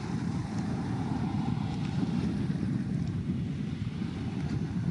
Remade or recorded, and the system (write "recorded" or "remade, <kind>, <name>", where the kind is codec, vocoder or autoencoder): remade, vocoder, BigVGAN v2